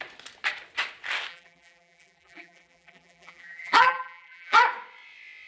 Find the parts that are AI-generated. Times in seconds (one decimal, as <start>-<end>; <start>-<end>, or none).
1.3-4.6